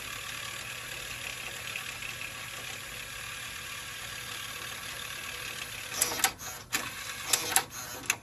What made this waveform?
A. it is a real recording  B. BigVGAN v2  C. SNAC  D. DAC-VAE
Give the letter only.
A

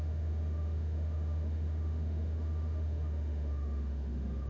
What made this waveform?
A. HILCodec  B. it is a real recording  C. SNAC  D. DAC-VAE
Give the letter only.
D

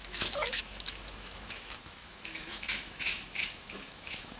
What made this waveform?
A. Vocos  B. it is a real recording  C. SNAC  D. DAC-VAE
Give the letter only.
D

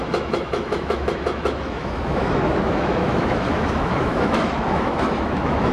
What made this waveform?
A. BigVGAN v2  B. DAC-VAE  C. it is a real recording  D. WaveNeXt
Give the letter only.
B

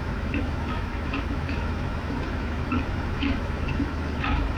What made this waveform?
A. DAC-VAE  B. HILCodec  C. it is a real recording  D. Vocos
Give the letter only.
A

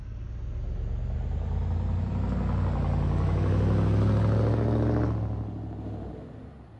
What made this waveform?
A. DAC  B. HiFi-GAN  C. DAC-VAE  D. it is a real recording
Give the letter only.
D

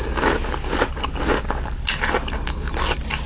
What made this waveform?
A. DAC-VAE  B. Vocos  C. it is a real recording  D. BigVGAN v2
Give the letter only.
C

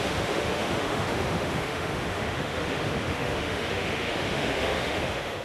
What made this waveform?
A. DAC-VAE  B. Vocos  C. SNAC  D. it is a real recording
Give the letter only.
A